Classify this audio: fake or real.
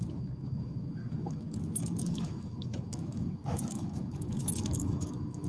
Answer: fake